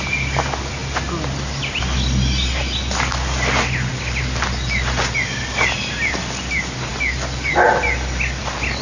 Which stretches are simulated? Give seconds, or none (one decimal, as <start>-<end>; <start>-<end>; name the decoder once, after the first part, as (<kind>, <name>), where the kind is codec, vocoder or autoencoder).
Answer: none